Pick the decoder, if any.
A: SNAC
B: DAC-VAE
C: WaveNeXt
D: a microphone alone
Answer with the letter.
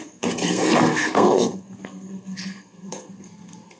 A